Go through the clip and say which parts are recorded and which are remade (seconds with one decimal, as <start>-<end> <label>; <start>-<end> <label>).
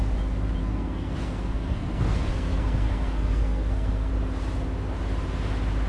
0.0-0.6 recorded; 0.6-4.1 remade; 4.1-5.9 recorded